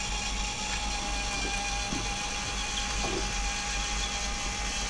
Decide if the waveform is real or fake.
real